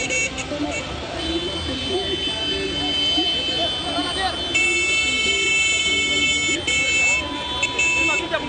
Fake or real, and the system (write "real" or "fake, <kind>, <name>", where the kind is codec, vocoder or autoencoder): real